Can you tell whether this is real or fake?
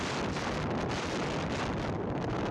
real